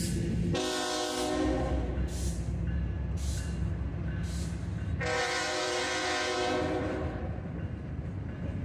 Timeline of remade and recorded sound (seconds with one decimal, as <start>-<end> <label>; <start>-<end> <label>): 0.0-8.6 recorded